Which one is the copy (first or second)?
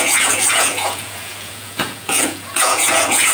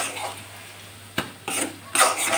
first